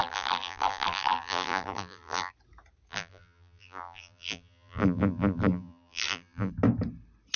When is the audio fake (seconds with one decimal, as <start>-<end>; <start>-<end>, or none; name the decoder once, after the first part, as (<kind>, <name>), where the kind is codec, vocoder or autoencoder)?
0.0-2.3 (vocoder, BigVGAN v2); 2.9-6.5